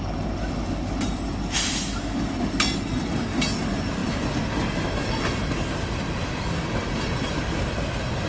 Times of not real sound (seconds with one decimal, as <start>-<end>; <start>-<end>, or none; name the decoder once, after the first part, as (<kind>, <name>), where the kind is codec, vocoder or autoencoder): none